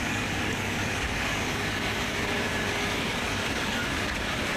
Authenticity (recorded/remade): remade